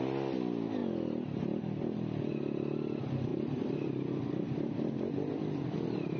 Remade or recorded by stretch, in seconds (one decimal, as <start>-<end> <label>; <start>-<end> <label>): 0.0-3.3 recorded; 3.3-4.1 remade; 4.1-6.2 recorded